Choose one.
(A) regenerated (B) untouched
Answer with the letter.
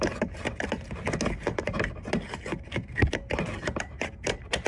B